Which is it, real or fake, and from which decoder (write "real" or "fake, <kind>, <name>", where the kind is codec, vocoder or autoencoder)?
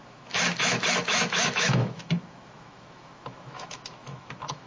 fake, autoencoder, DAC-VAE